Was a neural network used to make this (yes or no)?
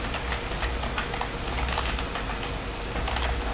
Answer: no